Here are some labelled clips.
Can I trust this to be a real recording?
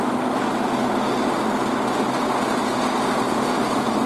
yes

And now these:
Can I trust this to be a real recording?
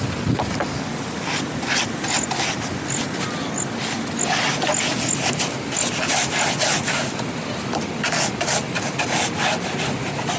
yes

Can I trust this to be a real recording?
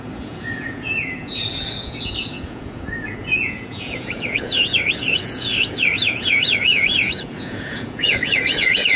no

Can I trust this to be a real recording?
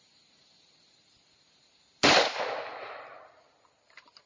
yes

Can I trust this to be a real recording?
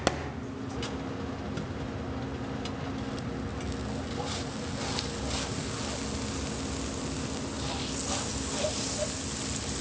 yes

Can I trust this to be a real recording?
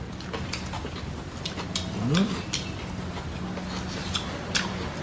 yes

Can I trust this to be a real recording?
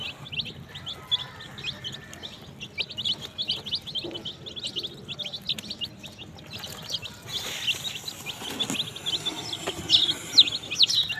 yes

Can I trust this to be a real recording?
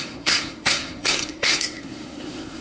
no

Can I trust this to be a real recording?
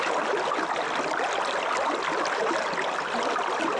yes